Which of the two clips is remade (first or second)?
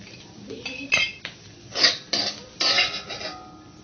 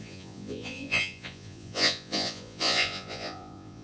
second